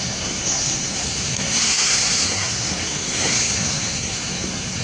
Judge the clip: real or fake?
fake